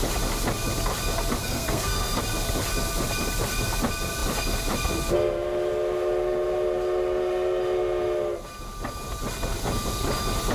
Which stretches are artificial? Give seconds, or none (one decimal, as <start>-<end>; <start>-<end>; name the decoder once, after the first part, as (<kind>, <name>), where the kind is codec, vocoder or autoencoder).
1.4-2.2 (codec, SNAC)